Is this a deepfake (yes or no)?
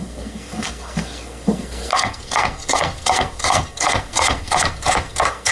yes